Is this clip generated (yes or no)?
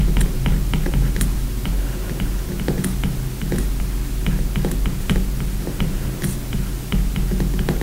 no